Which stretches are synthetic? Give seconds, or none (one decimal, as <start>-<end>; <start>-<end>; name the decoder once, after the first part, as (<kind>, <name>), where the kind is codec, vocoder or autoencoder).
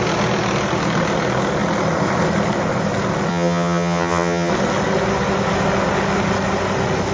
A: 3.3-4.5 (vocoder, HiFi-GAN)